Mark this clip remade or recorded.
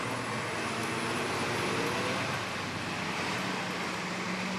recorded